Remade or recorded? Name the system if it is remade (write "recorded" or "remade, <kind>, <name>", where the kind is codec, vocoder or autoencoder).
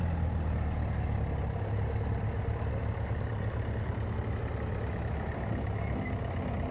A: recorded